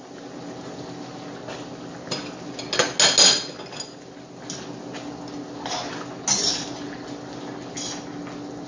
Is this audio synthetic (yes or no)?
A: no